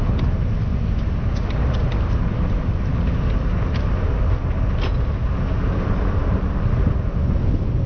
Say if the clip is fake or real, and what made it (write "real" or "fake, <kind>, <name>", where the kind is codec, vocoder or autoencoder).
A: real